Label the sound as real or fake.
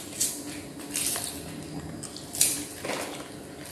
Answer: real